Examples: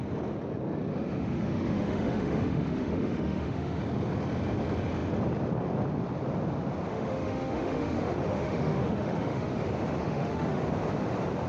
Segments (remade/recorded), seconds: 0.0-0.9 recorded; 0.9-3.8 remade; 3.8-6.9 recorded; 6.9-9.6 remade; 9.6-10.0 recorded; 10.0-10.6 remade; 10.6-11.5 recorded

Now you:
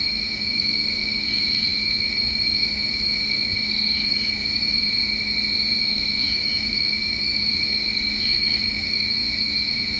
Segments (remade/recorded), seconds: 0.0-5.0 remade; 5.0-5.8 recorded; 5.8-10.0 remade

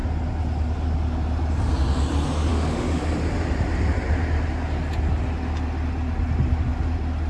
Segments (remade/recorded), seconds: 0.0-2.5 recorded; 2.5-3.0 remade; 3.0-7.3 recorded

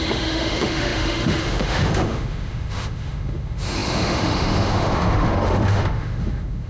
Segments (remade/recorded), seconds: 0.0-6.7 remade

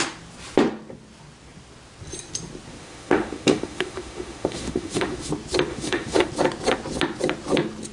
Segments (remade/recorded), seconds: 0.0-2.8 recorded; 2.8-5.3 remade; 5.3-5.7 recorded; 5.7-6.3 remade; 6.3-7.9 recorded

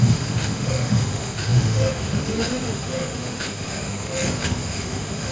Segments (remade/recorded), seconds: 0.0-5.3 remade

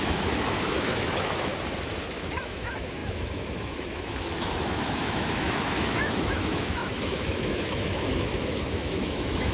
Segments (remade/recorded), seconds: 0.0-1.5 remade; 1.5-2.1 recorded; 2.1-9.5 remade

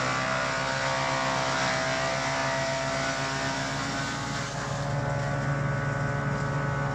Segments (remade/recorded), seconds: 0.0-6.9 recorded